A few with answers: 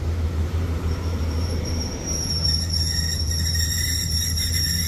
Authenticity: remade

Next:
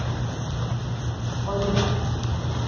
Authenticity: recorded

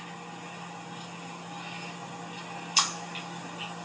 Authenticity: recorded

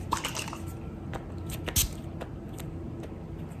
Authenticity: recorded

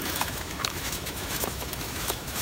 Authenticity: remade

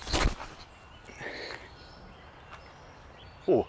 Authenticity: recorded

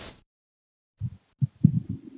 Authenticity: remade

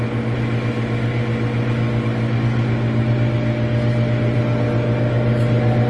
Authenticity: recorded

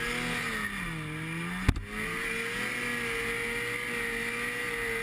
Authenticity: recorded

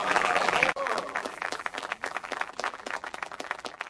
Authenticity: remade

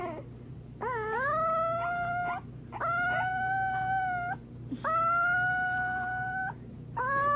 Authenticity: recorded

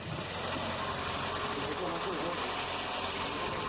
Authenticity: recorded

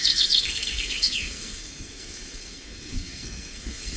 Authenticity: remade